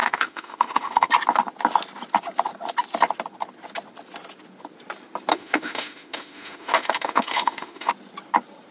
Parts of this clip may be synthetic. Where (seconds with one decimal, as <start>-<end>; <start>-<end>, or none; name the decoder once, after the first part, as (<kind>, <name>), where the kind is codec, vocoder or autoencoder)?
0.0-1.1 (autoencoder, DAC-VAE); 5.3-7.9